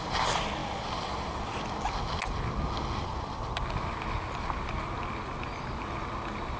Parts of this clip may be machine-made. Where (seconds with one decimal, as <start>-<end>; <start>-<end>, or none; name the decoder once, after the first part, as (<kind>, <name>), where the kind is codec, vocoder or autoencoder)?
none